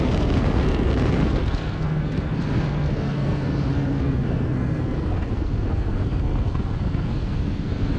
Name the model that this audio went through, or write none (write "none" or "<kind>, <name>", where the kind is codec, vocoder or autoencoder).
codec, SNAC